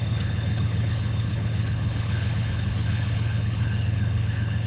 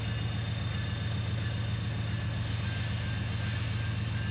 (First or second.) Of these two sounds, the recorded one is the second